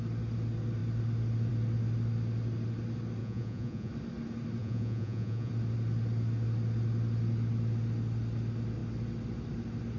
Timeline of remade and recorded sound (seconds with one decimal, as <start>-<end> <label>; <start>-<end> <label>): 0.0-3.2 recorded; 3.2-3.9 remade; 3.9-4.6 recorded; 4.6-5.5 remade; 5.5-10.0 recorded